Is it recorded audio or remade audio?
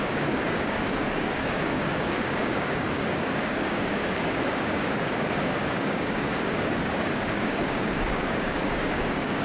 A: remade